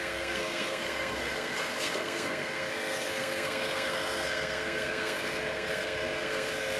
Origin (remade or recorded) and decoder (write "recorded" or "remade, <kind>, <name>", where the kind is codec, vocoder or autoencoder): remade, codec, SNAC